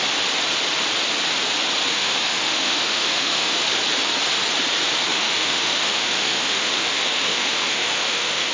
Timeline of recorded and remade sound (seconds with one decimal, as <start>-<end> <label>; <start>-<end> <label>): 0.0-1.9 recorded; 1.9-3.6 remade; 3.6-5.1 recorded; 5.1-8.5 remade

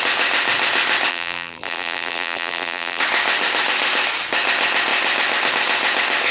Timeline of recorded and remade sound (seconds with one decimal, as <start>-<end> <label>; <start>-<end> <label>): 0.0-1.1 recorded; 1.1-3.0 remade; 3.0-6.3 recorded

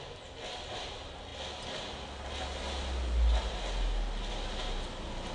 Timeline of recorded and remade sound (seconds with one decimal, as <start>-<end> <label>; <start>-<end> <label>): 0.0-5.3 recorded